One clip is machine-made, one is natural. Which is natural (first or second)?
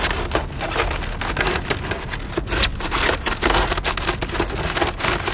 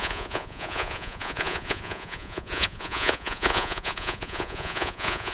first